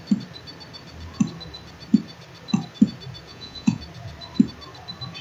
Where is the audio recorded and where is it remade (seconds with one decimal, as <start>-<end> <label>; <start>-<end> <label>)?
0.0-3.3 recorded; 3.3-3.8 remade; 3.8-5.2 recorded